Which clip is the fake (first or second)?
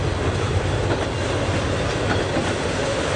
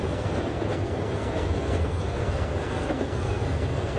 second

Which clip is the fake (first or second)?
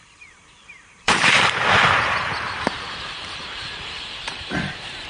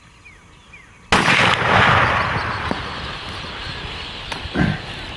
first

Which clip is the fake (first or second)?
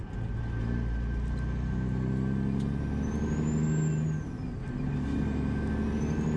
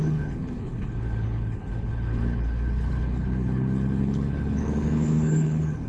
second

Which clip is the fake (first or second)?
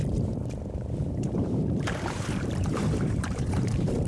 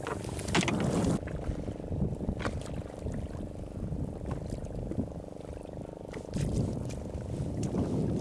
first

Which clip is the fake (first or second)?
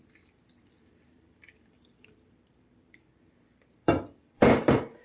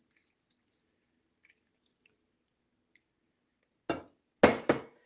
first